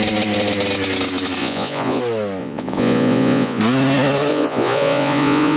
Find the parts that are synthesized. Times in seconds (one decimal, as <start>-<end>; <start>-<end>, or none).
1.4-2.0; 2.4-3.6; 4.3-5.6